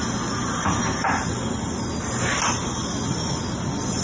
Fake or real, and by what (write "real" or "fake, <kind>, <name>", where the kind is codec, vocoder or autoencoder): real